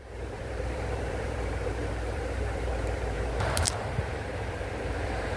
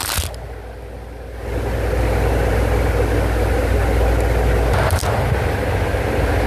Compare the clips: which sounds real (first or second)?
second